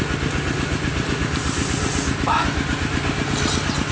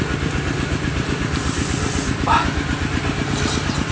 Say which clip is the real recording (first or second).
first